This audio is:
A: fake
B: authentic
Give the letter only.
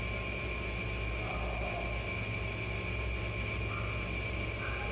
B